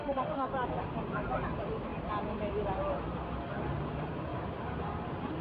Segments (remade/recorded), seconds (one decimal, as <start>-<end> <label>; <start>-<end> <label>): 0.0-0.5 remade; 0.5-5.4 recorded